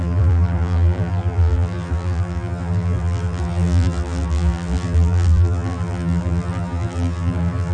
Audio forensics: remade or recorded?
remade